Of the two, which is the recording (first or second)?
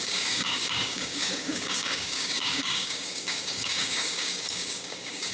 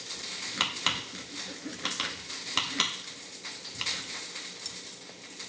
second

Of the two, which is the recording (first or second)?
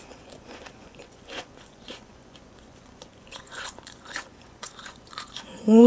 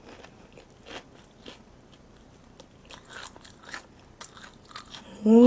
second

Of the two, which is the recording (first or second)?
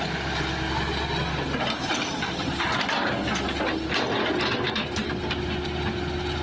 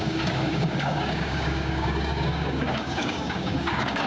first